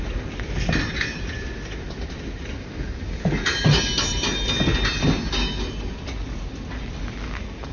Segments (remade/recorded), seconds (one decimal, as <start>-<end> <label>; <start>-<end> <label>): 0.0-7.7 recorded